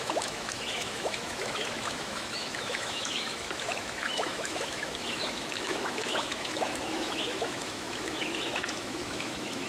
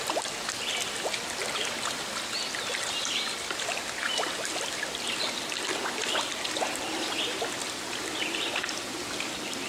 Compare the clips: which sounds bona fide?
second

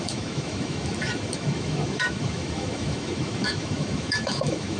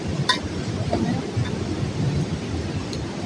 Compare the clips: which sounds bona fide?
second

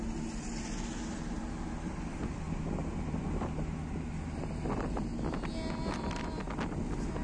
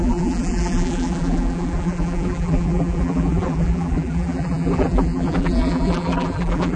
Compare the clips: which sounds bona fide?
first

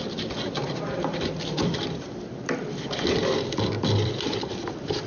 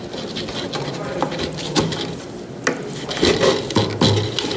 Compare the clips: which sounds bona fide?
second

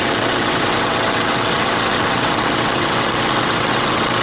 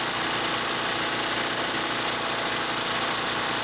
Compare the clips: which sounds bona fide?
second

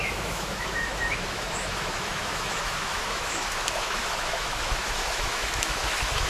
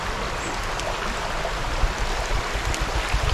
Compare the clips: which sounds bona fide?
second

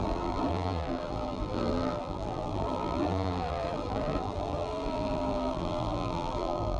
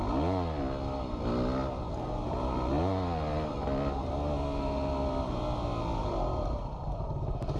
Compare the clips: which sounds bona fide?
second